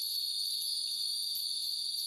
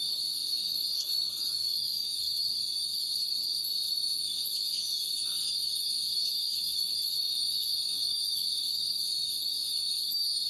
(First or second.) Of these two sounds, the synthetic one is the second